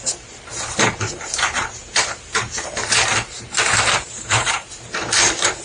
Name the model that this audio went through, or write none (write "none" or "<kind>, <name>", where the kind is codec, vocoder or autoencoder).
vocoder, BigVGAN v2